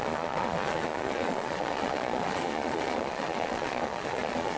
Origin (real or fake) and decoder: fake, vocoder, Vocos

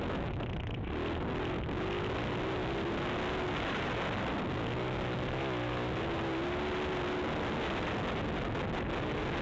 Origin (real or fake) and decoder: real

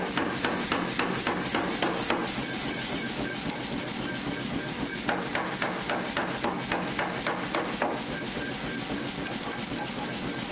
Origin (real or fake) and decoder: real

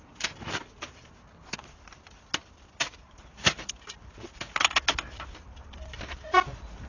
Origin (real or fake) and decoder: real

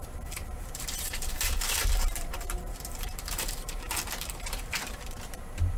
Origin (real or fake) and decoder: fake, vocoder, BigVGAN v2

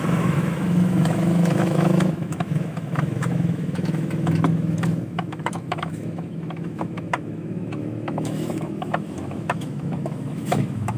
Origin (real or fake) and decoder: fake, autoencoder, DAC-VAE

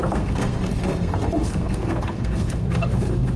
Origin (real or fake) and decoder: fake, codec, SNAC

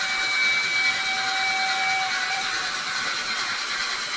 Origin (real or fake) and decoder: real